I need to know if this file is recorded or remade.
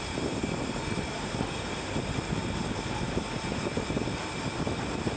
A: recorded